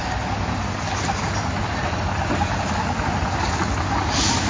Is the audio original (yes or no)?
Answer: yes